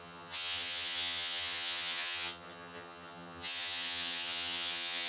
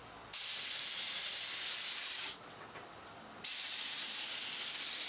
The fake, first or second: first